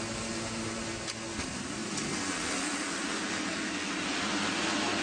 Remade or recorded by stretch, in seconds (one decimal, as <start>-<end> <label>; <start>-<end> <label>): 0.0-5.0 recorded